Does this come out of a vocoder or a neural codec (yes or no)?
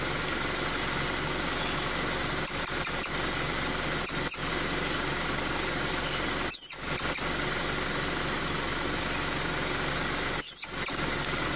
no